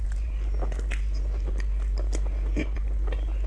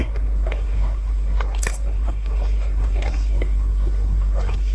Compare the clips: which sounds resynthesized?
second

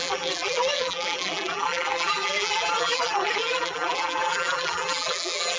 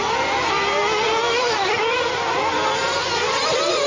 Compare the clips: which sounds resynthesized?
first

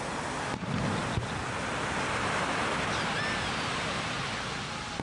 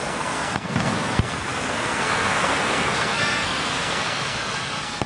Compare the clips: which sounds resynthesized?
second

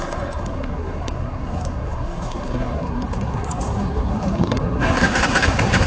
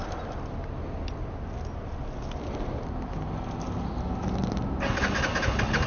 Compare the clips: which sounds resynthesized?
first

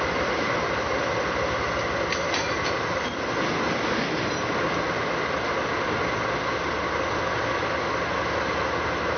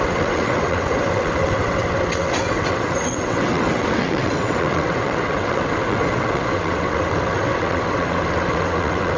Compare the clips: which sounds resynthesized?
second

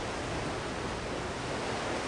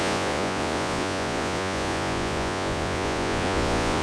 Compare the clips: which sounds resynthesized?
second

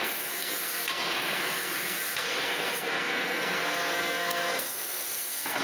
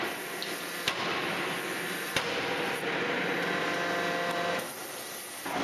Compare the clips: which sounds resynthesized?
first